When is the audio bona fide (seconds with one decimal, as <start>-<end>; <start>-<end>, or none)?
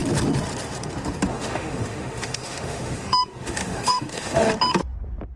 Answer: 0.0-1.3; 4.5-5.4